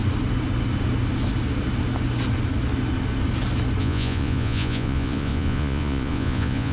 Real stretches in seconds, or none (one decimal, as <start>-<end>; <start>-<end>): 0.0-3.8